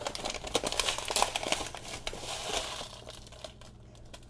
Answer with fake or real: real